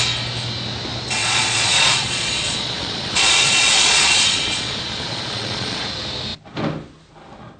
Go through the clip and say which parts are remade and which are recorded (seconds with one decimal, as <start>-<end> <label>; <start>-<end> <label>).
0.0-1.2 recorded; 1.2-5.8 remade; 5.8-7.6 recorded